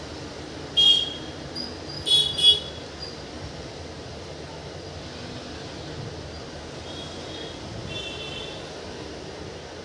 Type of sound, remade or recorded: recorded